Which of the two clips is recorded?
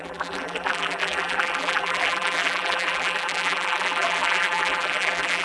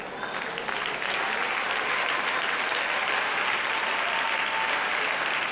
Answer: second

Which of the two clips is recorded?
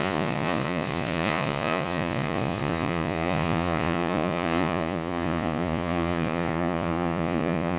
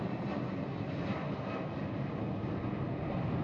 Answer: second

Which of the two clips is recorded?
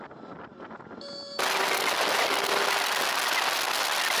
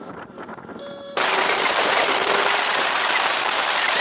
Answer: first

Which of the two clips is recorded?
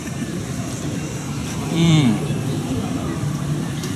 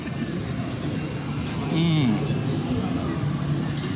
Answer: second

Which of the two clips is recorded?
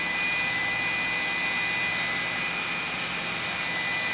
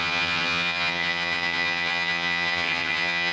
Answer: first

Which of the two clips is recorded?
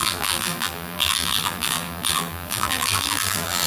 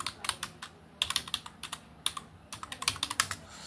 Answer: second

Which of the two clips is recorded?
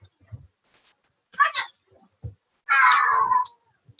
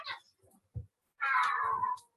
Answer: first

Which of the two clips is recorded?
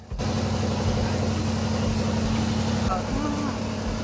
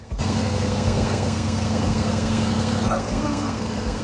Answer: first